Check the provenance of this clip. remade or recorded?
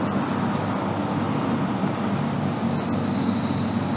remade